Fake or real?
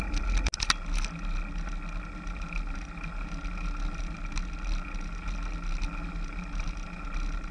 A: real